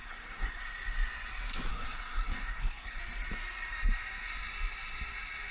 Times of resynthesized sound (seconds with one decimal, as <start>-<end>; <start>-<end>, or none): 0.0-0.6; 1.7-3.0

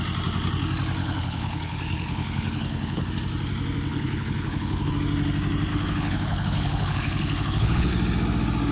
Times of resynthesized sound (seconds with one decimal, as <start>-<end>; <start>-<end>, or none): 1.0-3.1; 3.9-4.9; 5.7-7.9

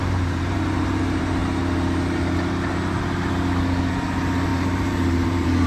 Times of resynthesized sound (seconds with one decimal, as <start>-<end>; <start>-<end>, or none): 0.0-1.4; 3.9-5.7

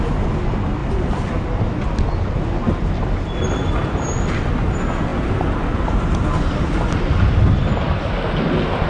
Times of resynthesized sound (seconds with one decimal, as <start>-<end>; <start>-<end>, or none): none

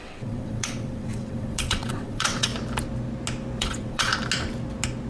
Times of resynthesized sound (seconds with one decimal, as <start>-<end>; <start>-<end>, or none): 0.0-2.5; 3.6-4.1